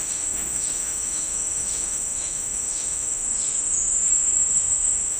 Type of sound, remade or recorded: remade